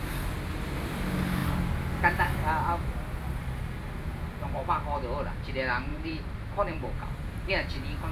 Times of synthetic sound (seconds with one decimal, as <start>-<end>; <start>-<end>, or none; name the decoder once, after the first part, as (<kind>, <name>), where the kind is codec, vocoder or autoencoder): 5.9-7.5 (vocoder, BigVGAN v2)